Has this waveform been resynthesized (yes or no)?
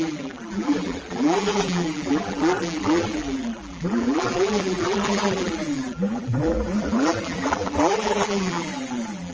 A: yes